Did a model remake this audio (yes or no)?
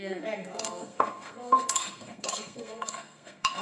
yes